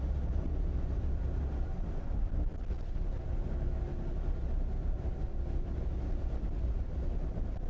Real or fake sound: real